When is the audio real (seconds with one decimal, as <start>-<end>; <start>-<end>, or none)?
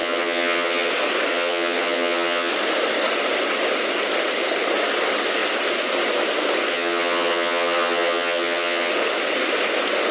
0.9-1.3; 2.5-6.7; 8.9-10.1